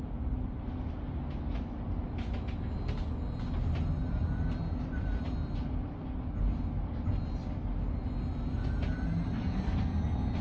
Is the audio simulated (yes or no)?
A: no